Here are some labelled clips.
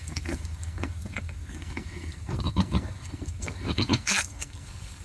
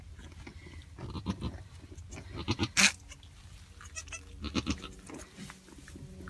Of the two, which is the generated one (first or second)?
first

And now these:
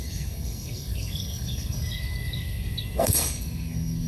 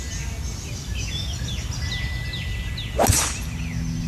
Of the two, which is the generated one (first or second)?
first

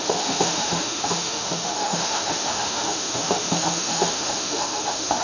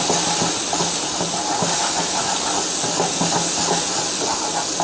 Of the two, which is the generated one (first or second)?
first